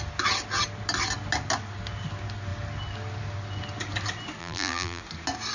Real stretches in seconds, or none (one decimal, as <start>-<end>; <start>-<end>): 0.0-4.4; 5.0-5.5